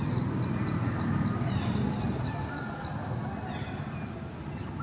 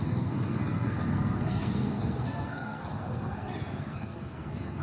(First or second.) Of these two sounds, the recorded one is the first